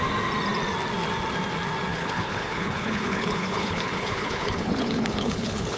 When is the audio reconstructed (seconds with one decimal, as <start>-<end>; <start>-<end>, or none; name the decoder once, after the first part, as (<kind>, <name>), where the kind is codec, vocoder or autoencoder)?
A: 1.9-5.8 (codec, HILCodec)